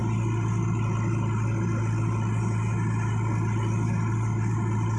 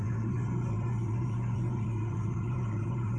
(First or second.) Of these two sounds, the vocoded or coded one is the second